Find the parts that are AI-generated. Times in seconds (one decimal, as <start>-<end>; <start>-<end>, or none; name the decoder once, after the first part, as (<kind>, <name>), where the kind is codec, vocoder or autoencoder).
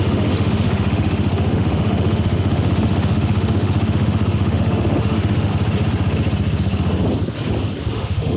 0.0-5.5 (autoencoder, DAC-VAE); 7.9-8.4